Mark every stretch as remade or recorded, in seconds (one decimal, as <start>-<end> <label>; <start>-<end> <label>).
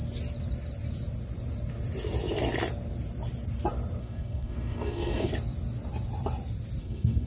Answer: 0.0-4.0 recorded; 4.0-5.3 remade; 5.3-6.8 recorded; 6.8-7.3 remade